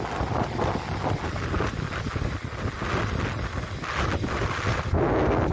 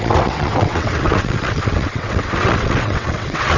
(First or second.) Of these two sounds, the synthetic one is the second